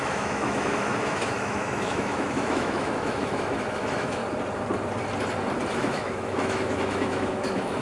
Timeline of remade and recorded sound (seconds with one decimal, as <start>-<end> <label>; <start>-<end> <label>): 0.0-4.2 remade; 4.2-5.7 recorded; 5.7-7.8 remade